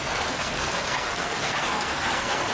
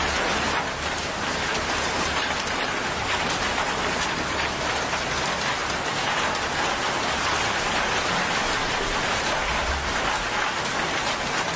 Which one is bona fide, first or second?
second